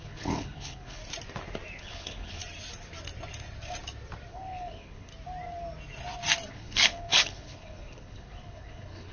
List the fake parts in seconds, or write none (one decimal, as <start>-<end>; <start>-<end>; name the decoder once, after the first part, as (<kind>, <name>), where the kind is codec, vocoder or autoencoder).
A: 0.0-1.0 (codec, HILCodec); 1.8-2.4; 4.3-5.1; 6.5-9.1